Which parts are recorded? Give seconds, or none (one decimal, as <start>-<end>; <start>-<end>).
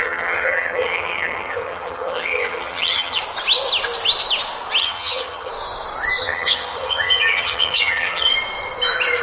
3.2-4.8; 5.5-6.2; 8.3-9.2